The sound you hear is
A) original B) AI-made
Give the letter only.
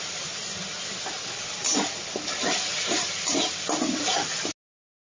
A